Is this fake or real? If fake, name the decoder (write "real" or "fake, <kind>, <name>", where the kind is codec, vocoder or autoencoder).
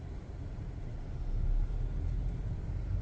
real